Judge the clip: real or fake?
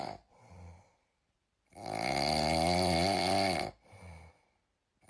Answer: real